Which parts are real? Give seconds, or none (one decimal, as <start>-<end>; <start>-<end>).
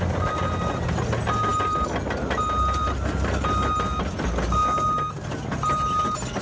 0.0-6.4